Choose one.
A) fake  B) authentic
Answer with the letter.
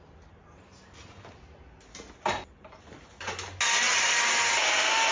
B